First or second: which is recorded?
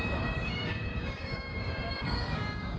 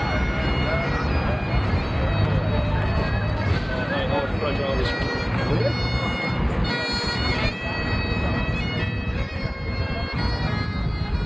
second